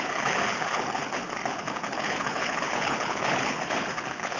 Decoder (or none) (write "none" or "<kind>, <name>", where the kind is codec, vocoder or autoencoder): codec, HILCodec